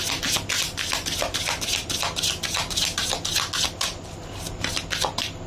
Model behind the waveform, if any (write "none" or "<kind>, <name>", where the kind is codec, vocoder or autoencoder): none